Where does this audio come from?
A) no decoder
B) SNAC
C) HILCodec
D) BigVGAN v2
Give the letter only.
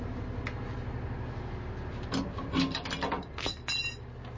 A